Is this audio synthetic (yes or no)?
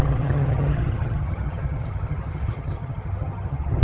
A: yes